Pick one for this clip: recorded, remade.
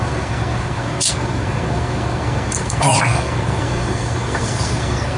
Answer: remade